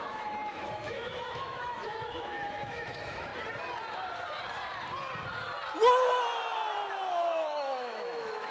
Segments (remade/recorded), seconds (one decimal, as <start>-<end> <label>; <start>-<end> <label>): 0.0-3.3 remade; 3.3-7.1 recorded; 7.1-8.5 remade